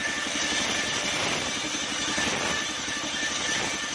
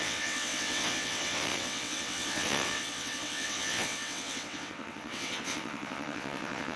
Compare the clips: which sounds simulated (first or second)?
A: second